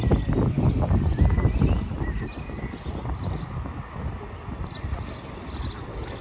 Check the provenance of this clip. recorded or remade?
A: recorded